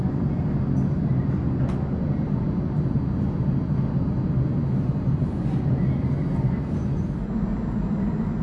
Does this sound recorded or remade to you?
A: recorded